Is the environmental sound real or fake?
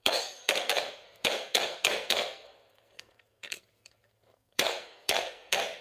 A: fake